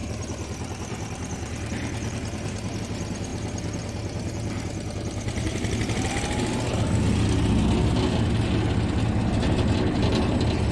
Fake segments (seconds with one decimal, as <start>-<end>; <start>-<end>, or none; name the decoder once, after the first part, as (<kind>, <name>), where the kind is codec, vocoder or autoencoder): 0.0-2.8 (vocoder, BigVGAN v2); 3.3-6.1